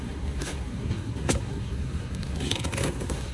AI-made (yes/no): yes